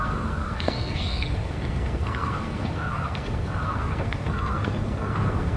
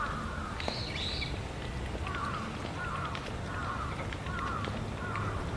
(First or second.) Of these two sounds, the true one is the second